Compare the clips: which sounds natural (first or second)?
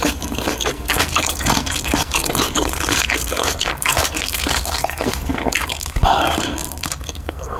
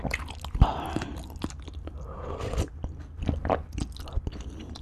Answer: second